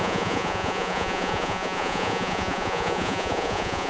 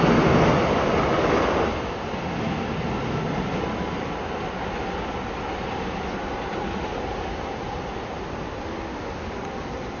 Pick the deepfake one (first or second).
first